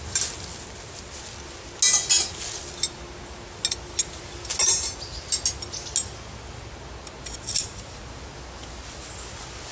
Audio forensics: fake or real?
real